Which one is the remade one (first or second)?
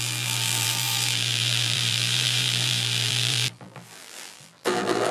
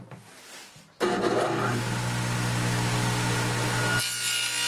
first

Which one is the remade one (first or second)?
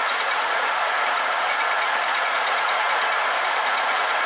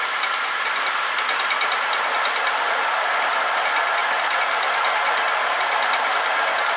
first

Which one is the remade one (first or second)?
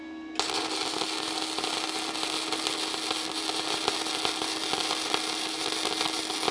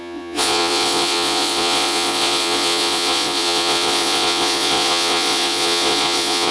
second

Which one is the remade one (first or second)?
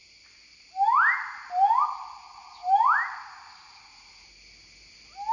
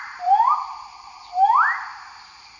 second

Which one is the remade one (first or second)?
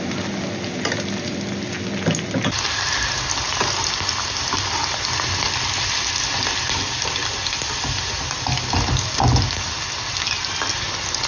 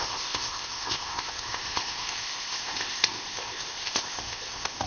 second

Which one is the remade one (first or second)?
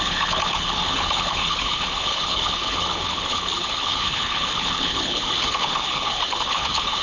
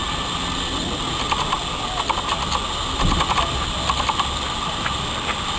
first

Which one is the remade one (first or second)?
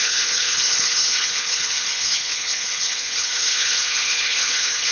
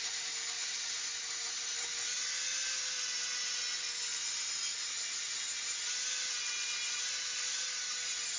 first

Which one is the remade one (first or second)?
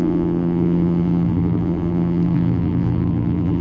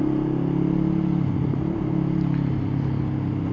first